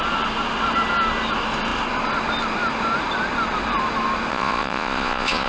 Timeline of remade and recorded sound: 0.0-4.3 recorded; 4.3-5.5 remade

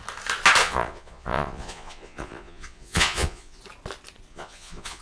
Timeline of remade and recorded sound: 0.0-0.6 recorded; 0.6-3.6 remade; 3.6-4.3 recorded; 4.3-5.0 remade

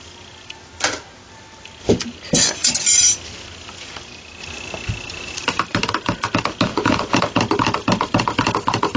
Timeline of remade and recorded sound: 0.0-6.7 recorded; 6.7-7.2 remade; 7.2-9.0 recorded

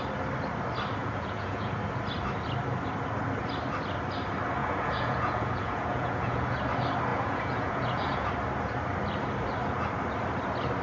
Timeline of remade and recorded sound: 0.0-1.0 recorded; 1.0-1.8 remade; 1.8-4.6 recorded; 4.6-6.6 remade; 6.6-7.1 recorded; 7.1-8.3 remade; 8.3-10.8 recorded

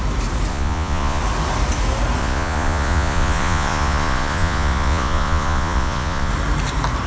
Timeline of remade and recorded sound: 0.0-0.5 recorded; 0.5-1.2 remade; 1.2-2.2 recorded; 2.2-6.3 remade; 6.3-7.1 recorded

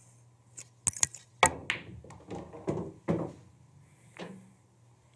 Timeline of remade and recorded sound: 0.0-5.2 recorded